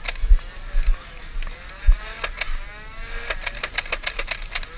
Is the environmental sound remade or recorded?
recorded